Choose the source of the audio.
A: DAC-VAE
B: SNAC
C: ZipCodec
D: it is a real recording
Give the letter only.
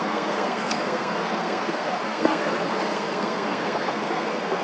B